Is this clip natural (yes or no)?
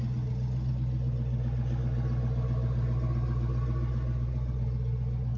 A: yes